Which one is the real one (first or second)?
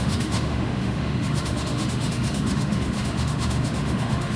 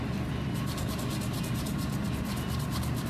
second